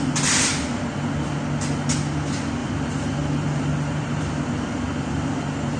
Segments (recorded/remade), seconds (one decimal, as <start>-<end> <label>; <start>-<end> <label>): 0.0-2.6 recorded; 2.6-5.8 remade